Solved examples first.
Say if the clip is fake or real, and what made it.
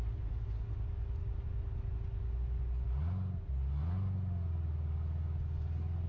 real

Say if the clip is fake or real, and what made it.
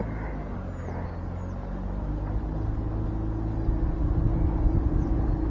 real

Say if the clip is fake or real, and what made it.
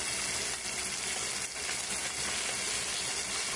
real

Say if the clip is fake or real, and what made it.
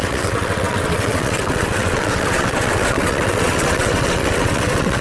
fake, vocoder, WaveNeXt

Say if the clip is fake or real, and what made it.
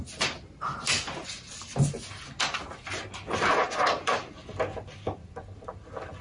real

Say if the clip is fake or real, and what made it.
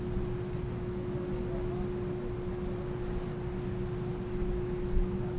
real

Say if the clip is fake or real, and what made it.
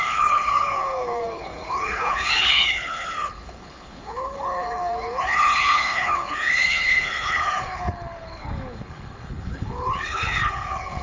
fake, codec, HILCodec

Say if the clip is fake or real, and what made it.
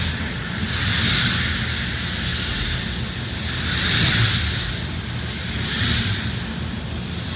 real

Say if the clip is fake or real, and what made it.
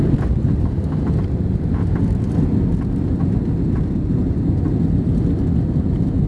real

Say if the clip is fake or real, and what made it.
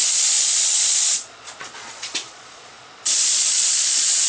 fake, vocoder, Vocos